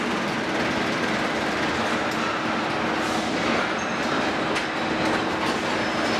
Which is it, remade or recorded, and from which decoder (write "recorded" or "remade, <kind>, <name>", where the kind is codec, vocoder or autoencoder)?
recorded